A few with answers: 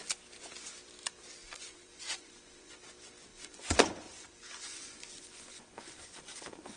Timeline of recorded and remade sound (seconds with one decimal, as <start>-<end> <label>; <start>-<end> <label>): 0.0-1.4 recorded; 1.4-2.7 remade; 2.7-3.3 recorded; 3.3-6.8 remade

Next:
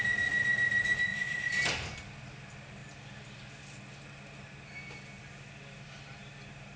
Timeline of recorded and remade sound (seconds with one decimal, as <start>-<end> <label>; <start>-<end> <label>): 0.0-1.1 recorded; 1.1-1.7 remade; 1.7-6.8 recorded

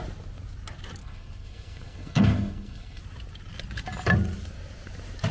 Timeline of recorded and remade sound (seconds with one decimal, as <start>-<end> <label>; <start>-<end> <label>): 0.0-1.0 recorded; 1.0-3.0 remade; 3.0-5.3 recorded

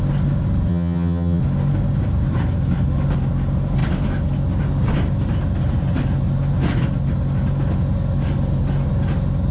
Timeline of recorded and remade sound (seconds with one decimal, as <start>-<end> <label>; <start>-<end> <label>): 0.0-0.7 recorded; 0.7-1.4 remade; 1.4-9.5 recorded